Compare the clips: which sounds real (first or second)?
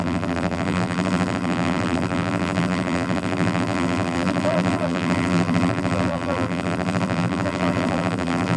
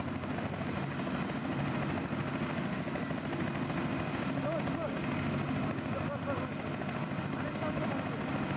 second